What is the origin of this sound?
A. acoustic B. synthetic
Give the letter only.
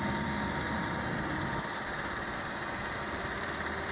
A